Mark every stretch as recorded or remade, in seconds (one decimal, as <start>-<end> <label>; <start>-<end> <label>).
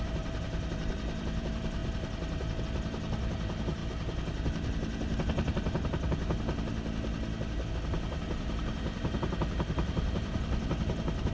0.0-3.8 remade; 3.8-7.7 recorded; 7.7-11.3 remade